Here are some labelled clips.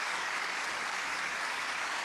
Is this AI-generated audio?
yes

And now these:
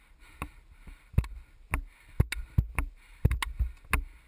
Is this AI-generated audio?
no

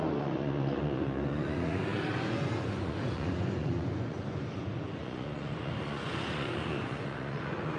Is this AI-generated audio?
yes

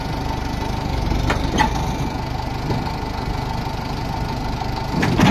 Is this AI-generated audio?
no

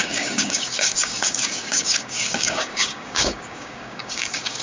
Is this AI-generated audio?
yes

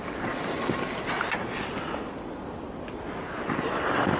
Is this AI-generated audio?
no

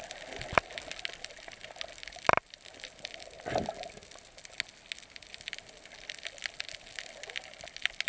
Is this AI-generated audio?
no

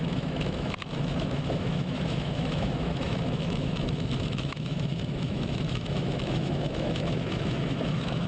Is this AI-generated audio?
yes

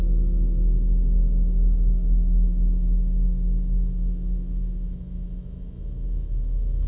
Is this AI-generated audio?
yes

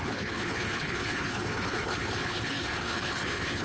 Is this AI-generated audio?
yes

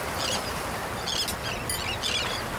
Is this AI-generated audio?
no